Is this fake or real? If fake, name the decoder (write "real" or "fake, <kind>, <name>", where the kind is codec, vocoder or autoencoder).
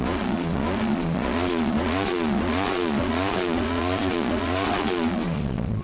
fake, vocoder, Vocos